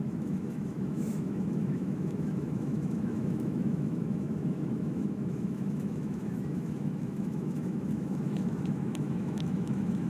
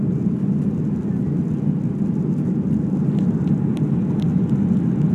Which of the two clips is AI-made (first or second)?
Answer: first